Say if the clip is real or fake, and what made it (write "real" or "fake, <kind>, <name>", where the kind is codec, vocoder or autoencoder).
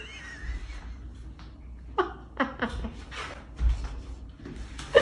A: real